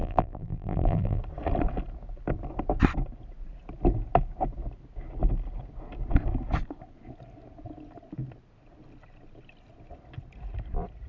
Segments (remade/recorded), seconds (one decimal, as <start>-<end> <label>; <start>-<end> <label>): 0.0-1.2 remade; 1.2-11.1 recorded